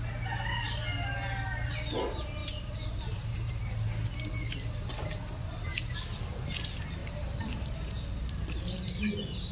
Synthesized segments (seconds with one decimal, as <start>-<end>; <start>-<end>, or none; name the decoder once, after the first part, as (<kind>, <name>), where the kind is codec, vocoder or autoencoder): 2.4-3.5 (vocoder, BigVGAN v2); 5.4-6.0; 7.0-8.7